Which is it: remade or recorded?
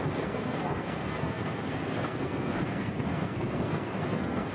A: remade